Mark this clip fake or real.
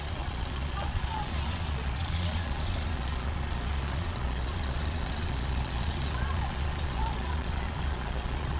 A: fake